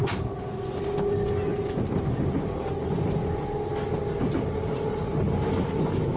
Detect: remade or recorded recorded